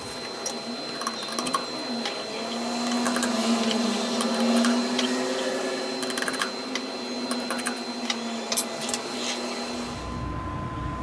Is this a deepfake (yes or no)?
no